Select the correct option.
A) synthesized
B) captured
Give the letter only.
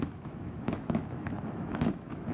A